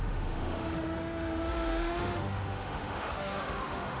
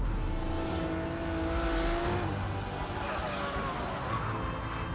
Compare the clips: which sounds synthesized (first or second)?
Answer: first